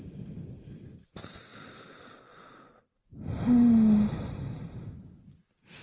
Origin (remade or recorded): recorded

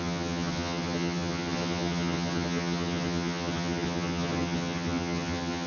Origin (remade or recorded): remade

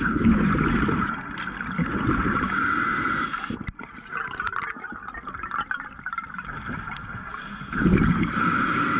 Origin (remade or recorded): recorded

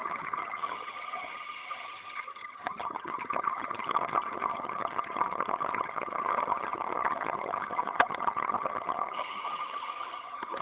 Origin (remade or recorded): remade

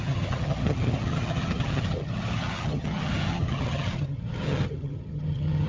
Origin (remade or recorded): remade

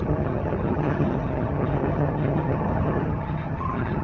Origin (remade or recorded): remade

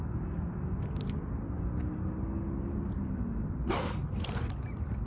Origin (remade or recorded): recorded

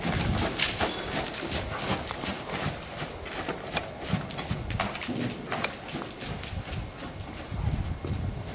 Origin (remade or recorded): recorded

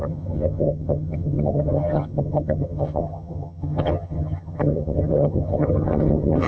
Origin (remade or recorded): remade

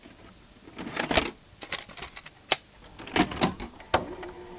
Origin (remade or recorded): recorded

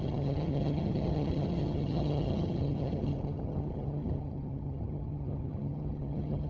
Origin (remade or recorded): remade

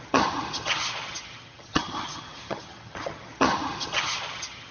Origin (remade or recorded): remade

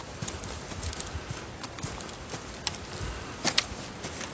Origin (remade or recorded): recorded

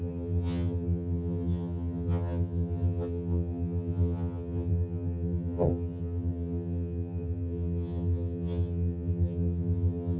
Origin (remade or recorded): remade